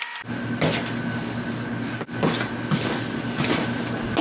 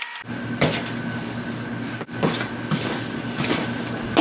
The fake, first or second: second